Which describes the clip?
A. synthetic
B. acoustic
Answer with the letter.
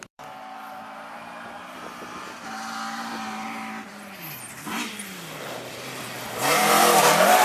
A